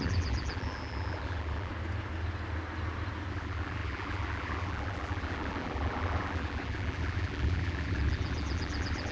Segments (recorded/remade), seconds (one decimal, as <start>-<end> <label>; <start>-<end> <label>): 0.0-1.7 remade; 1.7-3.3 recorded; 3.3-9.1 remade